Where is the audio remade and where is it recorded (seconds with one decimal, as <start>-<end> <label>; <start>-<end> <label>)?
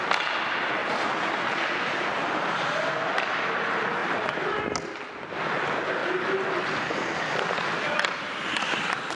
0.0-4.0 recorded; 4.0-4.6 remade; 4.6-9.1 recorded